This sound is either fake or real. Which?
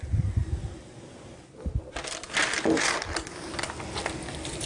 real